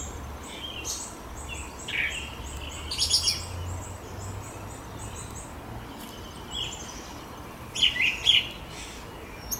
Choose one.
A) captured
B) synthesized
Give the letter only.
A